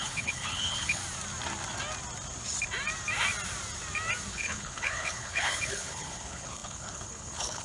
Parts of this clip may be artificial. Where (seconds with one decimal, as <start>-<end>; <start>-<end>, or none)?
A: 0.0-1.0; 4.3-7.6